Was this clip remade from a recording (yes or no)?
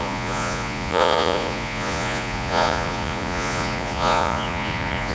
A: yes